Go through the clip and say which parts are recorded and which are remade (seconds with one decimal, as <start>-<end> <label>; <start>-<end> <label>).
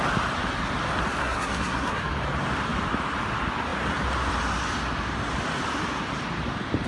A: 0.0-1.2 recorded; 1.2-2.1 remade; 2.1-6.9 recorded